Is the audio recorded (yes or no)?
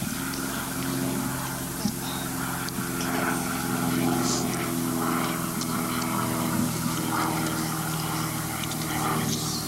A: yes